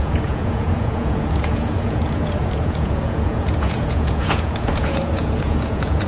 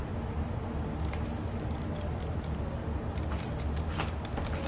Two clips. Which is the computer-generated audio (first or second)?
first